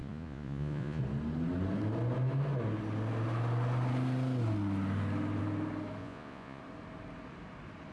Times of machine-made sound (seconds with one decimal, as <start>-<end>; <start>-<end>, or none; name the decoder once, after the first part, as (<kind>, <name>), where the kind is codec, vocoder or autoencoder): 0.0-1.0 (vocoder, Vocos); 6.0-6.6